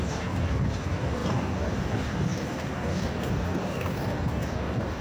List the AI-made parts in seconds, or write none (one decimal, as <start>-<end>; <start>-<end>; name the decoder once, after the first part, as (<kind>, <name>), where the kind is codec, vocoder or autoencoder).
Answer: 0.0-5.0 (codec, DAC)